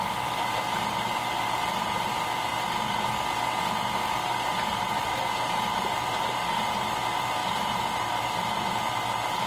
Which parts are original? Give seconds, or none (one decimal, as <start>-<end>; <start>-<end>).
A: 2.5-4.2